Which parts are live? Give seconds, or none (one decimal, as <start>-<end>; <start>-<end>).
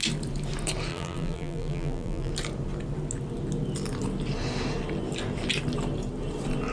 0.0-0.9; 2.3-6.7